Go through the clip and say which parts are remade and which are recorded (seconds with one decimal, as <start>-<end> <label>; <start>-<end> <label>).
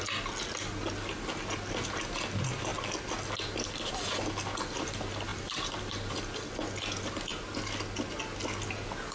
0.0-5.3 recorded; 5.3-6.5 remade; 6.5-9.1 recorded